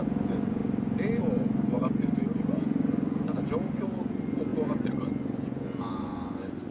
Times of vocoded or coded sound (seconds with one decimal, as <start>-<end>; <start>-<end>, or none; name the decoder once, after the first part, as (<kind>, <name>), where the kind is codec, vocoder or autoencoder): 0.0-0.6 (vocoder, Vocos); 1.2-6.7